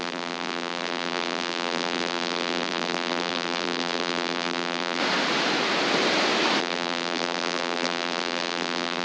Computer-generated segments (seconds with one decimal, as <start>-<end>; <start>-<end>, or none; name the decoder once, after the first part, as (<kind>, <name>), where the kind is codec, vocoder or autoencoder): 0.0-5.0 (vocoder, BigVGAN v2); 6.6-9.0